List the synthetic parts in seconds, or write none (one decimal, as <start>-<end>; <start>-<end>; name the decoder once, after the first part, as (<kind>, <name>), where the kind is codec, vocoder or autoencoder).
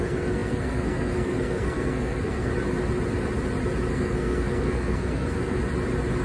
0.0-2.5 (codec, SNAC); 3.9-5.6